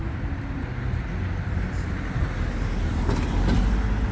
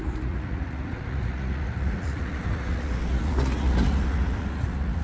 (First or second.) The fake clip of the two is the second